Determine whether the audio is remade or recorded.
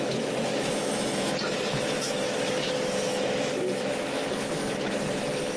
remade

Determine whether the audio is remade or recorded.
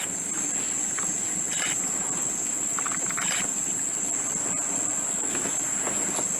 recorded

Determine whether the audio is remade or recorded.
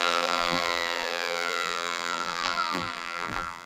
remade